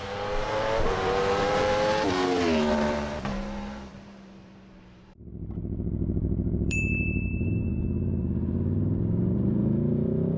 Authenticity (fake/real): fake